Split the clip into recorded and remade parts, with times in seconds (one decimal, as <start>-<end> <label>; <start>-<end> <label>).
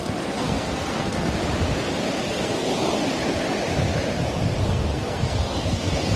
0.0-1.4 remade; 1.4-2.2 recorded; 2.2-2.7 remade; 2.7-4.7 recorded; 4.7-6.2 remade